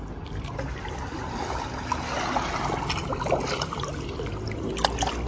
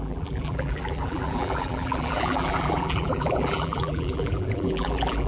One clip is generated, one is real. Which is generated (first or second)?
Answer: second